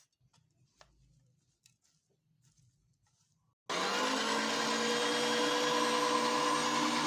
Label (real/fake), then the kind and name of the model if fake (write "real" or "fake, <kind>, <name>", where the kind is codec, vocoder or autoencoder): real